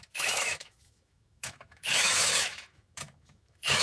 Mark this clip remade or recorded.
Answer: remade